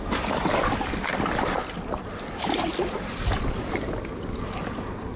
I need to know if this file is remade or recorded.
recorded